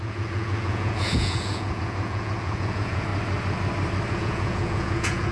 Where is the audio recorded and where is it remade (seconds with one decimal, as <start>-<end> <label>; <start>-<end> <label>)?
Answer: 0.0-3.1 remade; 3.1-4.1 recorded; 4.1-5.3 remade